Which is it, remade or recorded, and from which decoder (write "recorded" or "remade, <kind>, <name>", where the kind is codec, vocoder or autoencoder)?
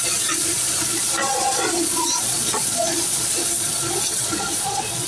remade, vocoder, Vocos